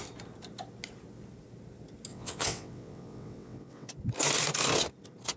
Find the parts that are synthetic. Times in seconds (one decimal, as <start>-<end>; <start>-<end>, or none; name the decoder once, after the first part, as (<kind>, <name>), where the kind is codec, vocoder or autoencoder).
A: 2.1-3.9 (vocoder, WaveNeXt)